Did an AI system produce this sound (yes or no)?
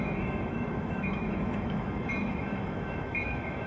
yes